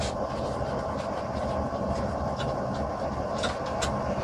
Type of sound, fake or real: real